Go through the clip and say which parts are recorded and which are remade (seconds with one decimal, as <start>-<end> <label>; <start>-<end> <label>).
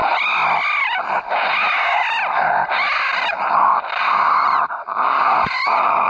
0.0-3.7 recorded; 3.7-6.1 remade